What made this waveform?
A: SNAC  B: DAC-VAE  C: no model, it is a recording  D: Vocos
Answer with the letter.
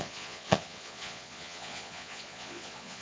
D